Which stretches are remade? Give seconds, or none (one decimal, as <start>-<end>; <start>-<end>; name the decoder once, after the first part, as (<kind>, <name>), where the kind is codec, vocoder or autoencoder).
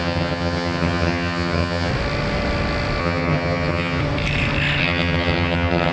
0.0-1.9 (vocoder, HiFi-GAN); 3.0-4.0; 4.8-5.9